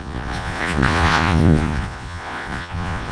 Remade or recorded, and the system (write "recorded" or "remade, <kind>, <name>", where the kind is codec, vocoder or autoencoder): remade, vocoder, Vocos